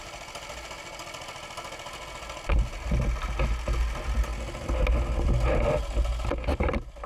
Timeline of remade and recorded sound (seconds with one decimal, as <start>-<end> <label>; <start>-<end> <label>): 0.0-7.1 recorded